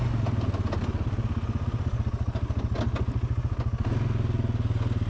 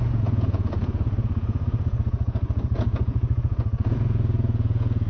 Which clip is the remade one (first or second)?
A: second